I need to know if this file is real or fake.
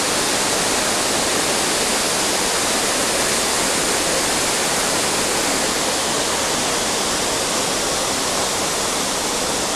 real